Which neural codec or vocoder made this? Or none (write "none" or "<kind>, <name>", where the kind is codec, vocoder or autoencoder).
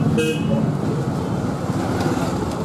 none